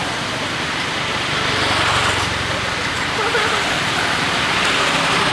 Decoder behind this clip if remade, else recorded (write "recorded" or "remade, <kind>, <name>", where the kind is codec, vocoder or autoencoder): recorded